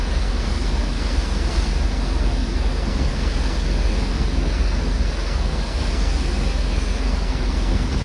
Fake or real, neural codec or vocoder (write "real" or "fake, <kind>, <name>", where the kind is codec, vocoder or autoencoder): fake, codec, SNAC